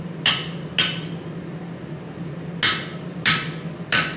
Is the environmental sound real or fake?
real